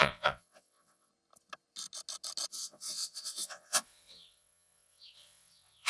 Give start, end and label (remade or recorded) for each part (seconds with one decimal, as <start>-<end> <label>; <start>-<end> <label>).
0.0-1.1 remade; 1.1-2.5 recorded; 2.5-5.9 remade